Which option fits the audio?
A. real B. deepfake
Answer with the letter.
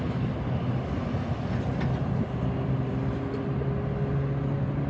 A